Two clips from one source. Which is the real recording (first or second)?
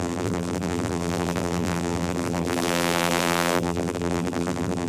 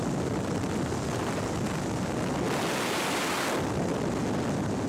second